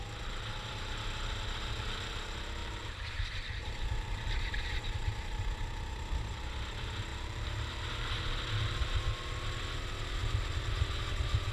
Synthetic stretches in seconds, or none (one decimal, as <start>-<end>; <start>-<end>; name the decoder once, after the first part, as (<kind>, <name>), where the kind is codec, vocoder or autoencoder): 2.6-4.6 (vocoder, BigVGAN v2); 7.1-8.2